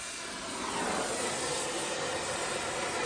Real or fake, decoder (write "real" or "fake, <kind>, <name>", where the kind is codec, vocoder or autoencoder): real